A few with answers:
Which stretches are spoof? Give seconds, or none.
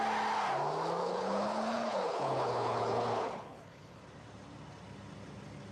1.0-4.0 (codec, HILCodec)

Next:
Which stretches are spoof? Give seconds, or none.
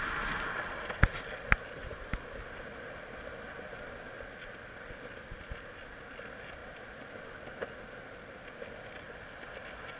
none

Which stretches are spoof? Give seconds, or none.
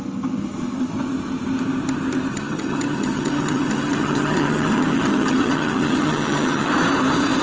2.3-6.7 (vocoder, HiFi-GAN)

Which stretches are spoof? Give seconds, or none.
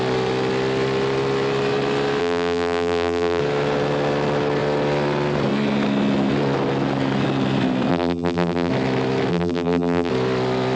2.2-3.4 (vocoder, BigVGAN v2); 7.9-8.7; 9.3-10.1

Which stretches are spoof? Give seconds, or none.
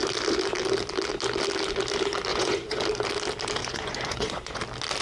2.3-2.8 (vocoder, Vocos); 3.6-4.6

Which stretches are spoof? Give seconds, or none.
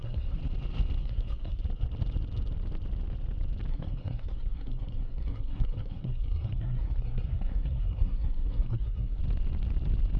0.0-0.4 (codec, SNAC); 1.0-1.6; 3.7-9.2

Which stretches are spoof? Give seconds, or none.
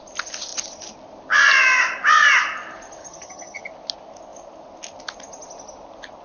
3.0-3.6 (vocoder, HiFi-GAN)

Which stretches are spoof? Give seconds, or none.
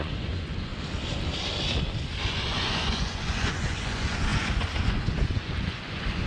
0.0-0.7 (vocoder, Vocos); 2.3-6.3